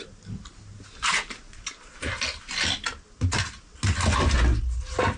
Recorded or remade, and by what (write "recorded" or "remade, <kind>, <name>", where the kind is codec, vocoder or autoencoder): recorded